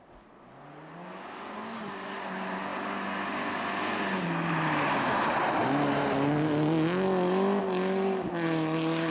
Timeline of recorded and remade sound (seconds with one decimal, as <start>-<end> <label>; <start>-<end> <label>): 0.0-9.1 recorded